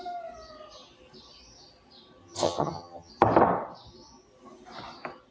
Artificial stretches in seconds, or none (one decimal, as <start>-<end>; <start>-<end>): 2.2-3.1